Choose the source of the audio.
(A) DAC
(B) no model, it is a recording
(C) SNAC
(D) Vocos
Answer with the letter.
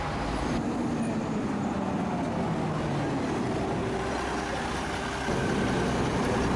B